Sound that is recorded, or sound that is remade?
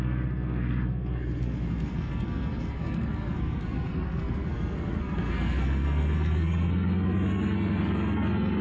remade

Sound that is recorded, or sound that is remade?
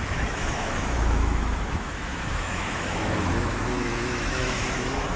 remade